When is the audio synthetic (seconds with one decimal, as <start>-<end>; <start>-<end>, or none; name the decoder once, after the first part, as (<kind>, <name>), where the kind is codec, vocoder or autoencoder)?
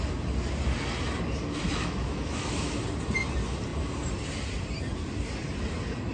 1.7-2.8 (autoencoder, DAC-VAE)